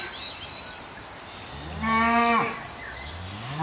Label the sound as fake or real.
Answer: real